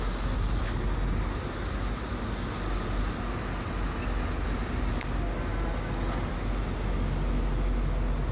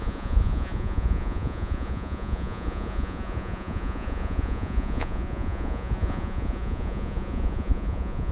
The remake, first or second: second